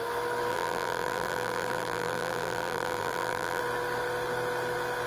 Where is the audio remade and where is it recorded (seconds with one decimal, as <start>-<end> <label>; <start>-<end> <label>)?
0.0-0.5 recorded; 0.5-3.6 remade; 3.6-5.1 recorded